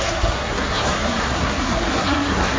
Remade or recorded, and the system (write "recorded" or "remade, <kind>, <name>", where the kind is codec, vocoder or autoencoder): remade, codec, SNAC